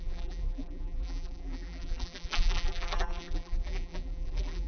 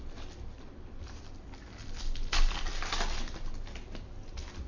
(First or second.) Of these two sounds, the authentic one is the second